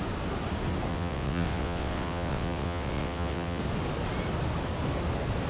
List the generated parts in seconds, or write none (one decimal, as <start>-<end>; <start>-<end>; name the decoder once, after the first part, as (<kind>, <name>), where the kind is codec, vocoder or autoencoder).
0.9-3.6 (vocoder, WaveNeXt)